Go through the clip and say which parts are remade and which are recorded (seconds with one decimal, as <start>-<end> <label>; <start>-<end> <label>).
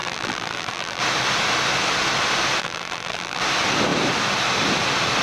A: 0.0-1.0 remade; 1.0-2.6 recorded; 2.6-3.4 remade; 3.4-5.2 recorded